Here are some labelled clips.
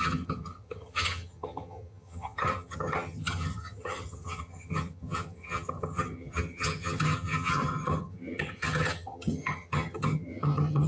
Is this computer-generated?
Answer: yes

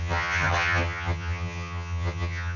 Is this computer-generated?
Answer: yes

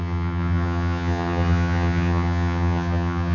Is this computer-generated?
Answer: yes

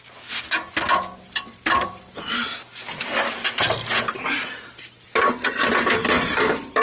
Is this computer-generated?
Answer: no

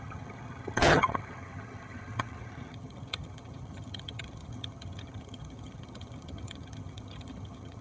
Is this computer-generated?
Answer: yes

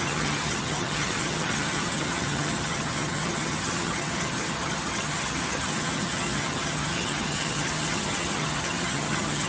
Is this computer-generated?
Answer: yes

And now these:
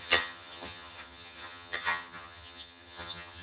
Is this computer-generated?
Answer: yes